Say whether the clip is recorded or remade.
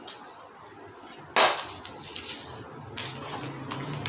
recorded